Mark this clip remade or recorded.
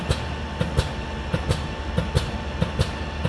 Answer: recorded